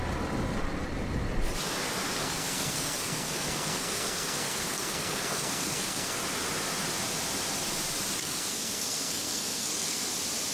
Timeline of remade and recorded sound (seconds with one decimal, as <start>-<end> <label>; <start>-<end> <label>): 0.0-2.2 recorded; 2.2-6.2 remade; 6.2-8.2 recorded; 8.2-10.1 remade; 10.1-10.5 recorded